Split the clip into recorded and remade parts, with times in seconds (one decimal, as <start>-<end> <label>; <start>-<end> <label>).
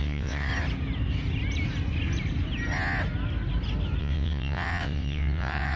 0.0-0.5 remade; 0.5-4.0 recorded; 4.0-5.8 remade